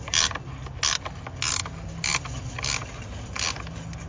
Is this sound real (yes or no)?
yes